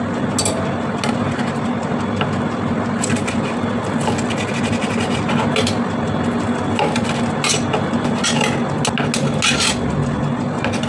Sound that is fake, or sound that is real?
real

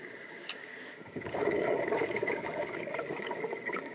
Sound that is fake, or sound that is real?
fake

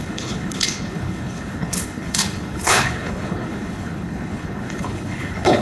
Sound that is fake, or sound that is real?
fake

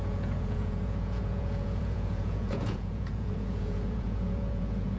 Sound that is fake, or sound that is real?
fake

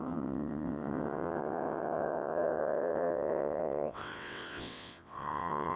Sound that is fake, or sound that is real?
fake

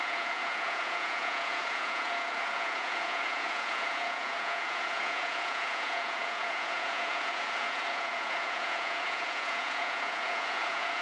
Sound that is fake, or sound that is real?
fake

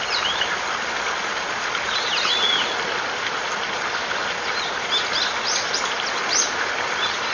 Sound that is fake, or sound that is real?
real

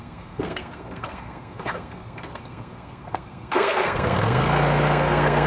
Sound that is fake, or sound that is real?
fake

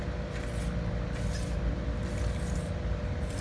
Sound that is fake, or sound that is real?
real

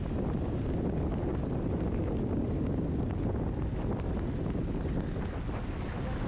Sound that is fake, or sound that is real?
real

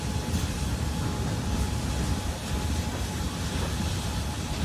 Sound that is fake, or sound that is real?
real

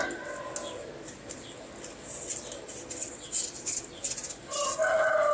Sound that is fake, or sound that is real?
real